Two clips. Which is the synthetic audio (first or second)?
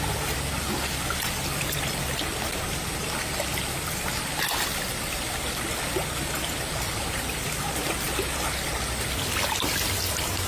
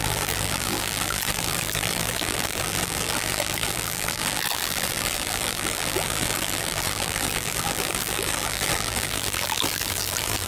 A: second